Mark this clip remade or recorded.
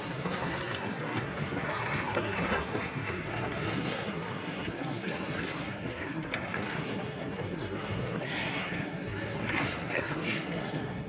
remade